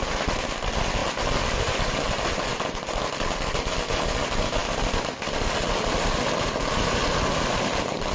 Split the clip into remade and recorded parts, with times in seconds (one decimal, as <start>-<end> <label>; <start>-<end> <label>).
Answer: 0.0-8.1 recorded